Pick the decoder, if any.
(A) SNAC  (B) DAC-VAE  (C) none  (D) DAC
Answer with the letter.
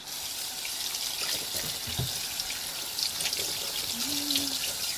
C